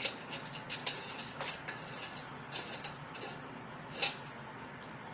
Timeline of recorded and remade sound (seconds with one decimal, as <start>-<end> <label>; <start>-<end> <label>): 0.0-5.1 recorded